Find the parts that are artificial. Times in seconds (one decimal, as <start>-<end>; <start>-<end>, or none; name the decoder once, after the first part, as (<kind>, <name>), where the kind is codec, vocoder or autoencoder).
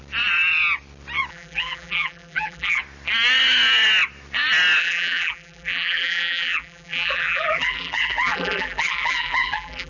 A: 1.3-2.8 (vocoder, BigVGAN v2); 4.8-9.9